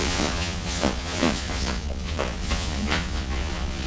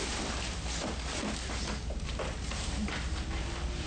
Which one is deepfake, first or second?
first